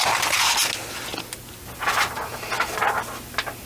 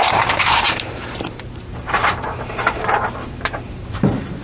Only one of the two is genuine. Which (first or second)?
first